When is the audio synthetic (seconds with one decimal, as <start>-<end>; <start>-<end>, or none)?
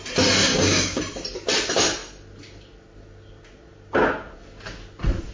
0.4-1.0